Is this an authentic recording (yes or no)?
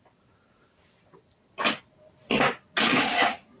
yes